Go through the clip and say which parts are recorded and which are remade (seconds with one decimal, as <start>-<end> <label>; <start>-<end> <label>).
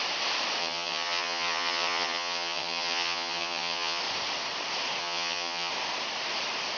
0.0-0.6 recorded; 0.6-4.0 remade; 4.0-5.0 recorded; 5.0-5.7 remade; 5.7-6.8 recorded